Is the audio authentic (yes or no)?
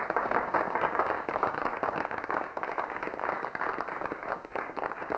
no